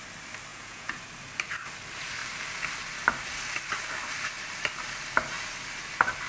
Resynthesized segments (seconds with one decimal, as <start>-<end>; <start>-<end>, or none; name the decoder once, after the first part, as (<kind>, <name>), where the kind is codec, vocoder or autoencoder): 0.5-1.0 (vocoder, Vocos)